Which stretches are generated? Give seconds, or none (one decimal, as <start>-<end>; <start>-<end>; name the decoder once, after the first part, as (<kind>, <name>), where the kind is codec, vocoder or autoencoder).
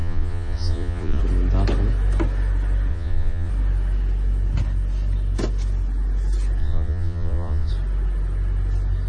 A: 0.0-1.2 (vocoder, Vocos); 2.9-3.5; 6.6-7.7